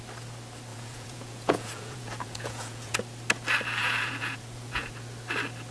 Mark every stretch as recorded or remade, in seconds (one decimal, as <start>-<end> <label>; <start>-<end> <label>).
0.0-0.7 recorded; 0.7-3.0 remade; 3.0-3.8 recorded; 3.8-4.9 remade; 4.9-5.7 recorded